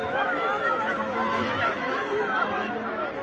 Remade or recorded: remade